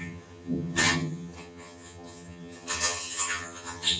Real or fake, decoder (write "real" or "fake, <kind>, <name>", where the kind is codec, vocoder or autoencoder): fake, vocoder, HiFi-GAN